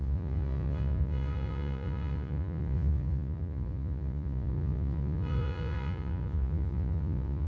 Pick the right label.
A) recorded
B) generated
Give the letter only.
B